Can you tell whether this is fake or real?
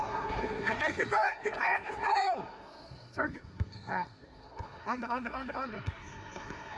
fake